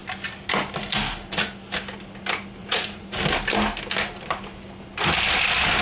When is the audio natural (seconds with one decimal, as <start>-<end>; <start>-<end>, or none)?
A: 0.0-2.6; 3.2-5.8